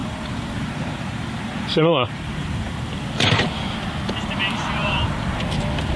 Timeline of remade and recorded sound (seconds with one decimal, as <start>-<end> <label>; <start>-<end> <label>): 0.0-3.6 remade; 3.6-4.8 recorded; 4.8-5.4 remade; 5.4-6.0 recorded